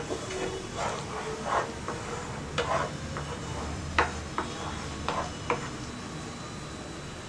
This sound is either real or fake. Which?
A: real